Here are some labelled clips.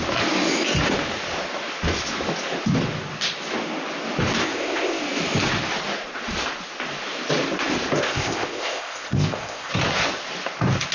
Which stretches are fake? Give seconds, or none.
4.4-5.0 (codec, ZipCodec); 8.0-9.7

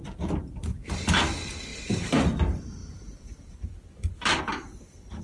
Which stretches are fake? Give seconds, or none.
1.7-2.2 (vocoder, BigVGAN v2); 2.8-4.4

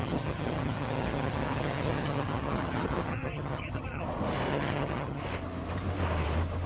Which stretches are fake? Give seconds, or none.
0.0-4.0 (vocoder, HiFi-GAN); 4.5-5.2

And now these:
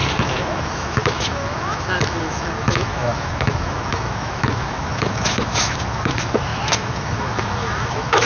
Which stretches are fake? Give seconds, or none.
0.0-8.3 (autoencoder, DAC-VAE)